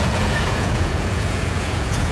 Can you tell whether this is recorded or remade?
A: remade